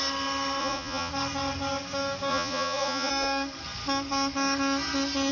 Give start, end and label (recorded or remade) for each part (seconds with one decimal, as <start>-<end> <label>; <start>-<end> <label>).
0.0-0.6 recorded; 0.6-1.1 remade; 1.1-2.3 recorded; 2.3-3.1 remade; 3.1-5.3 recorded